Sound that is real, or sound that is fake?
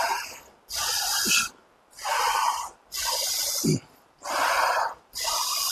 real